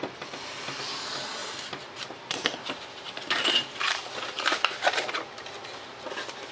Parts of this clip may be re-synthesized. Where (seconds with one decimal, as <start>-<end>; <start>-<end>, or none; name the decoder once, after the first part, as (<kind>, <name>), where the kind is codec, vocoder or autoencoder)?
1.4-5.3 (vocoder, BigVGAN v2)